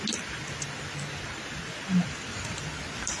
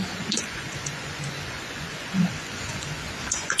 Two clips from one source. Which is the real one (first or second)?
first